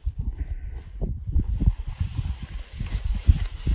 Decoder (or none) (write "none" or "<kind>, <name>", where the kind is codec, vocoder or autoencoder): none